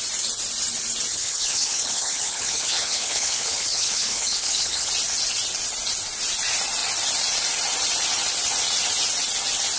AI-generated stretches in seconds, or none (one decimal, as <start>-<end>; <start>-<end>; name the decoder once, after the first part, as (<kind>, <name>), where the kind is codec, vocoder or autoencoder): 1.1-4.9 (codec, HILCodec)